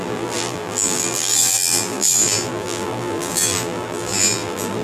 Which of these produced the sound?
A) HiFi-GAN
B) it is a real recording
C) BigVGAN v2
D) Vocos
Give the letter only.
C